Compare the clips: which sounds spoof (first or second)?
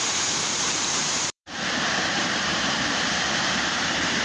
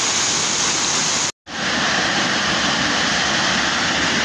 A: first